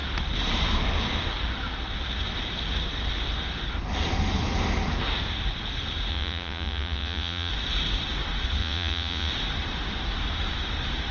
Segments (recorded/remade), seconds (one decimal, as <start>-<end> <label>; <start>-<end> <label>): 0.0-6.1 recorded; 6.1-7.5 remade; 7.5-8.6 recorded; 8.6-9.3 remade; 9.3-11.1 recorded